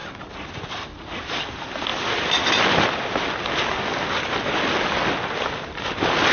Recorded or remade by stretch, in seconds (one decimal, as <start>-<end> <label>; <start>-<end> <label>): 0.0-1.2 remade; 1.2-6.3 recorded